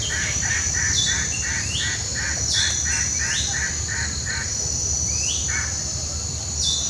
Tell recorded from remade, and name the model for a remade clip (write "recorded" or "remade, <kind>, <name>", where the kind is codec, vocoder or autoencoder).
recorded